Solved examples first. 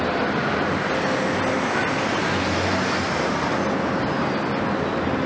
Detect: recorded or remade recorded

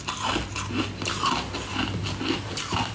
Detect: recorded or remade recorded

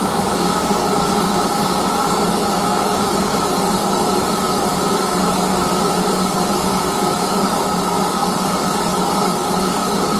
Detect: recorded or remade remade